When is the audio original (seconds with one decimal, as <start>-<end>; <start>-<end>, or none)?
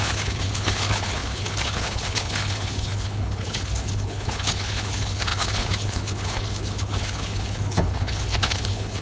none